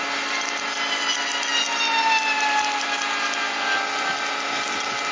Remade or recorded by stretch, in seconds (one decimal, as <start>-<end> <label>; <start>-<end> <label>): 0.0-5.1 recorded